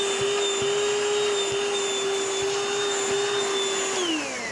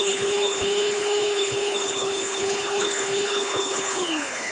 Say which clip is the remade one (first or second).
second